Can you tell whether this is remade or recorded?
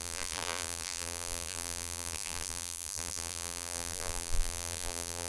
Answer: remade